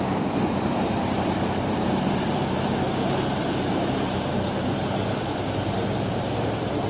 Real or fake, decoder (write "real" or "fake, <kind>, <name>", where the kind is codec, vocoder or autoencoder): fake, vocoder, BigVGAN v2